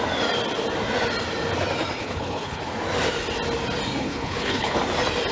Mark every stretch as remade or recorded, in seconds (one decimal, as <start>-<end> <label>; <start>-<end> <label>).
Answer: 0.0-2.0 recorded; 2.0-2.6 remade; 2.6-4.0 recorded; 4.0-4.8 remade; 4.8-5.3 recorded

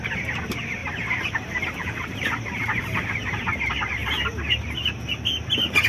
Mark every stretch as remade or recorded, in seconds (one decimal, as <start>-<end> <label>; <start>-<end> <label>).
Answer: 0.0-0.8 recorded; 0.8-3.0 remade; 3.0-5.9 recorded

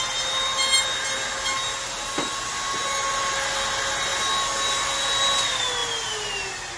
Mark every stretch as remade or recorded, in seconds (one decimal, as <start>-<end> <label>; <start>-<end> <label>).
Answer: 0.0-6.8 recorded

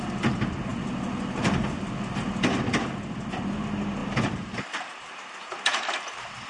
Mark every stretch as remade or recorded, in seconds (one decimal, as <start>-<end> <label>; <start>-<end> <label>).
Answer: 0.0-4.0 recorded; 4.0-5.2 remade; 5.2-6.5 recorded

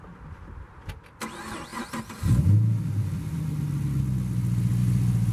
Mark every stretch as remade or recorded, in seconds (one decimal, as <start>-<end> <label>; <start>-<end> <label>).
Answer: 0.0-4.8 recorded; 4.8-5.3 remade